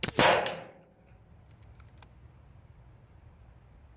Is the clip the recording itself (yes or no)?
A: yes